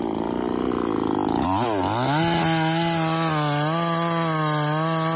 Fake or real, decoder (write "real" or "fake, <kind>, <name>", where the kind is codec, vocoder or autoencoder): real